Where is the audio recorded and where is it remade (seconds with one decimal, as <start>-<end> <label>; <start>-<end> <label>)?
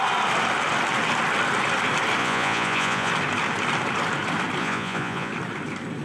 0.0-2.2 recorded; 2.2-3.1 remade; 3.1-4.6 recorded; 4.6-5.3 remade; 5.3-6.0 recorded